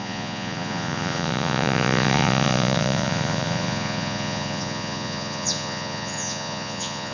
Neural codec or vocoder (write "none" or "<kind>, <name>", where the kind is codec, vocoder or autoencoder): vocoder, Vocos